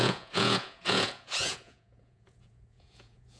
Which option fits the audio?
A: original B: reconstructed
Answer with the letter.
B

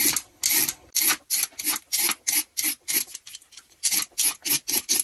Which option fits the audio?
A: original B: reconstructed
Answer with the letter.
A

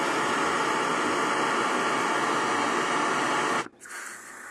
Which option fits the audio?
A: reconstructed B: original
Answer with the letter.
B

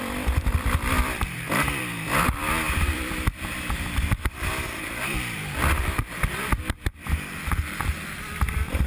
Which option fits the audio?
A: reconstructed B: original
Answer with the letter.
A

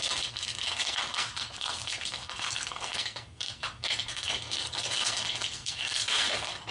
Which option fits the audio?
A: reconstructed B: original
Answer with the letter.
A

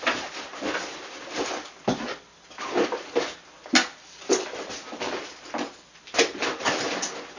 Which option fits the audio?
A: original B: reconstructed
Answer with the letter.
A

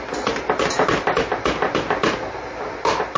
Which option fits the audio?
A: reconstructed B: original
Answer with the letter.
B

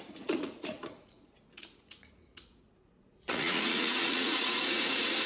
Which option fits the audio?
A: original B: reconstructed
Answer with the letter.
B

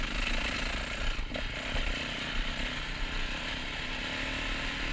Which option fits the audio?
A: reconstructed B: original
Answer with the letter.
B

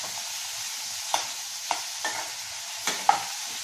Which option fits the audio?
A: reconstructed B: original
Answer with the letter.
B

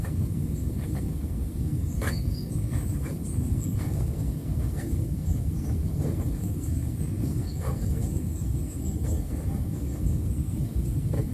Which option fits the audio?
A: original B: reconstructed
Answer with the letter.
B